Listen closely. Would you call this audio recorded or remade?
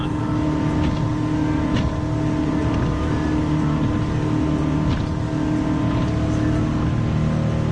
recorded